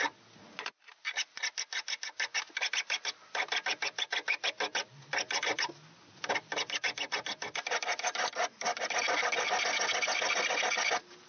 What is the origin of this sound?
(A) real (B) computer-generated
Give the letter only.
A